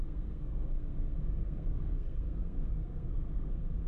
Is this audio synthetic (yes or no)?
yes